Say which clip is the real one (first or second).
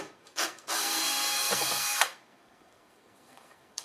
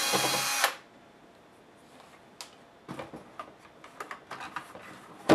second